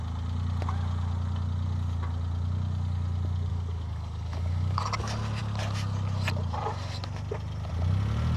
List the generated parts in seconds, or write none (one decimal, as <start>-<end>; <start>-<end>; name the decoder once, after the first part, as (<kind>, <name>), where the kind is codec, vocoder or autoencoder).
3.5-4.8 (codec, DAC)